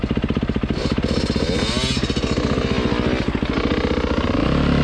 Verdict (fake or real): real